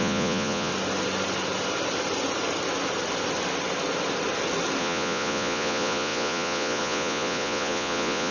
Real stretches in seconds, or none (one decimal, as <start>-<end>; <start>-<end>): 0.7-4.8